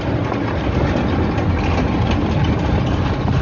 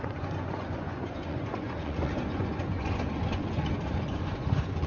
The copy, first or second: second